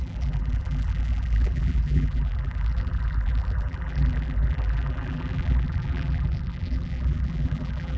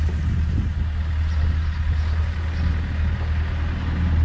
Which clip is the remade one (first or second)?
first